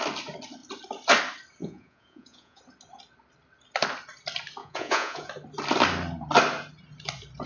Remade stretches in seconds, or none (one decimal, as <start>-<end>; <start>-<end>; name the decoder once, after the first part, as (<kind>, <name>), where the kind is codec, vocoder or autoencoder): 1.6-2.6 (vocoder, Vocos); 4.6-5.3